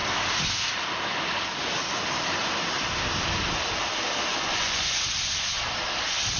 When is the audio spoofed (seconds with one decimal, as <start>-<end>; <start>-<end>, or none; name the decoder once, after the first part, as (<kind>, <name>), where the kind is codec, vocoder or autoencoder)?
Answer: 4.3-5.0 (vocoder, Vocos)